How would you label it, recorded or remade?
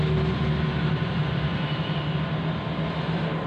recorded